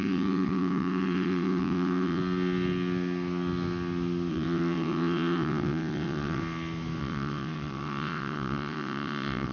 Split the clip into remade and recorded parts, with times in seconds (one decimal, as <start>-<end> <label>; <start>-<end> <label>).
0.0-2.2 remade; 2.2-4.3 recorded; 4.3-6.4 remade; 6.4-7.0 recorded; 7.0-9.5 remade